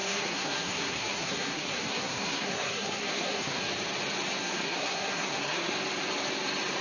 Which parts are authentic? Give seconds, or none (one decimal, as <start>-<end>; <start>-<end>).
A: 3.6-4.4; 5.7-6.8